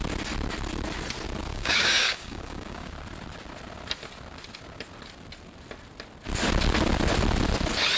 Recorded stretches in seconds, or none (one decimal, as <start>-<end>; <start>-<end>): 0.0-1.5; 2.9-8.0